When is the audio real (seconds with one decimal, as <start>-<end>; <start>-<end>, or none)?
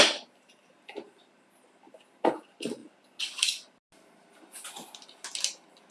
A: 0.0-5.9